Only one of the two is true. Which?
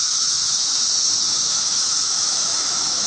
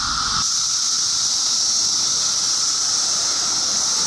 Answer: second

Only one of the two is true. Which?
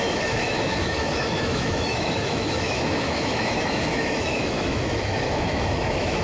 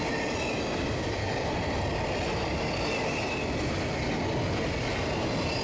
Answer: second